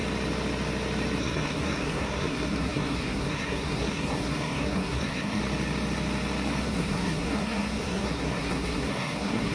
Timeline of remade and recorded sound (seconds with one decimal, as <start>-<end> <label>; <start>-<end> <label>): 0.0-1.2 recorded; 1.2-5.4 remade; 5.4-6.6 recorded; 6.6-9.5 remade